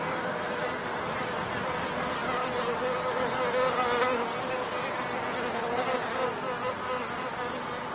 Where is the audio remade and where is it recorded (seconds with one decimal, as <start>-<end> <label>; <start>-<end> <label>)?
0.0-7.9 recorded